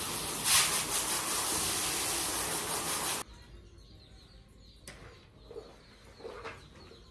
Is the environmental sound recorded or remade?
recorded